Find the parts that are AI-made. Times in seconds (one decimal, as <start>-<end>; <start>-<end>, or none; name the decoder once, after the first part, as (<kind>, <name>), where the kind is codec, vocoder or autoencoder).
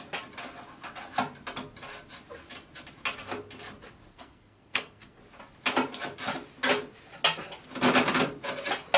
4.1-5.2 (codec, SNAC)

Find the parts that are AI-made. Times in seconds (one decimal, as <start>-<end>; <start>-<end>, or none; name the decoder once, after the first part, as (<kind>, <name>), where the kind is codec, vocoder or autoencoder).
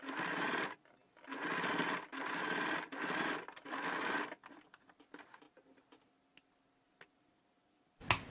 none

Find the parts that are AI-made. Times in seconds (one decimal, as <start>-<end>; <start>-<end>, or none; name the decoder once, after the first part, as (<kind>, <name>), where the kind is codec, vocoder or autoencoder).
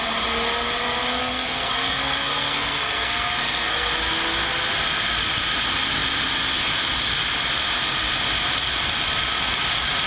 1.2-3.9 (codec, SNAC)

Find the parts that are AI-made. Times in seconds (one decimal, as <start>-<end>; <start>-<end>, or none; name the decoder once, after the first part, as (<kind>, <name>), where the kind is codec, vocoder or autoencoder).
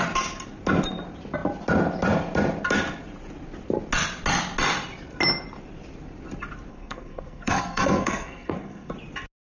6.7-8.9 (codec, SNAC)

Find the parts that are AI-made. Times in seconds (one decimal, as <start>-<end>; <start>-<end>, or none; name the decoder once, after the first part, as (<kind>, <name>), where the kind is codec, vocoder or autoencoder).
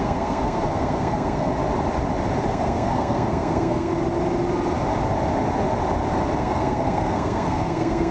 0.0-1.5 (codec, SNAC); 2.5-3.9; 6.4-8.1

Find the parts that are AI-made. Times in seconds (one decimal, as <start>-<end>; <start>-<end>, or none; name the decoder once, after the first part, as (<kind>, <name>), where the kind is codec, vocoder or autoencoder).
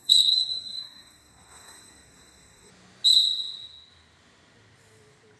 0.0-2.7 (codec, SNAC)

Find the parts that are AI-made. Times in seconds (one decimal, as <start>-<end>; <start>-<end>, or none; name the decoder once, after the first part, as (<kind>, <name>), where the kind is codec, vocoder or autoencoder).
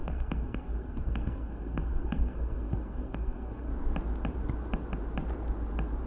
0.0-3.7 (codec, SNAC)